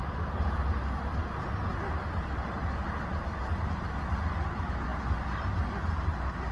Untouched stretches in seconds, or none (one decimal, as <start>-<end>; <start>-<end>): 0.0-6.5